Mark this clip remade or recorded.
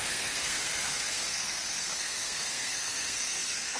remade